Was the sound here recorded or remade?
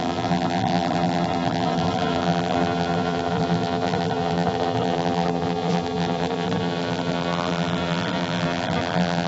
remade